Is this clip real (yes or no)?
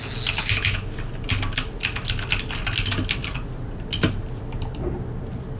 yes